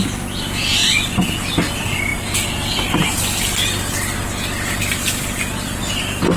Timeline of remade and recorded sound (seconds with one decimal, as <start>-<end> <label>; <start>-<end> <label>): 0.0-6.4 recorded